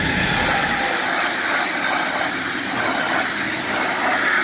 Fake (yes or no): no